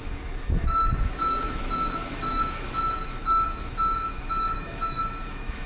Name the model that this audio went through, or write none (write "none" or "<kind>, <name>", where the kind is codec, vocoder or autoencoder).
autoencoder, DAC-VAE